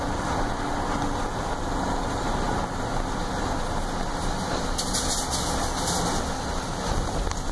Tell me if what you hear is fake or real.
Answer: real